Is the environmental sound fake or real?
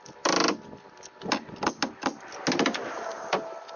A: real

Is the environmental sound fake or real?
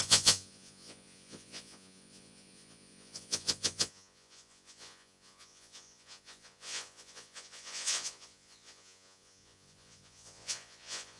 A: fake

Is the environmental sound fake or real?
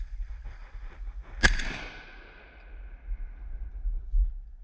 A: real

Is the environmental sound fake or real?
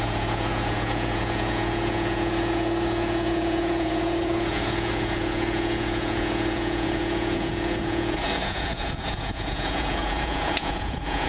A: fake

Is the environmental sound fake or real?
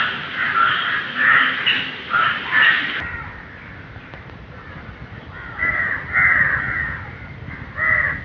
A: real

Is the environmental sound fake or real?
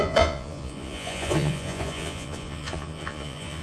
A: fake